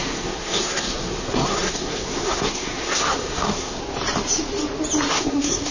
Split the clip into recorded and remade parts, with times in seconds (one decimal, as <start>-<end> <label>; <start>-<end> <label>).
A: 0.0-3.8 remade; 3.8-5.1 recorded; 5.1-5.7 remade